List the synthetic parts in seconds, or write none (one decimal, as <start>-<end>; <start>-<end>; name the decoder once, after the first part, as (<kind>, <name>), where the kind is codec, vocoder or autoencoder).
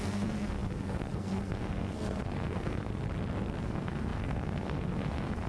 0.0-2.9 (codec, SNAC); 3.6-5.5